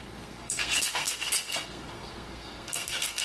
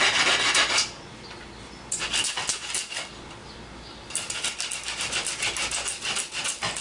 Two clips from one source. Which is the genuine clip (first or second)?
second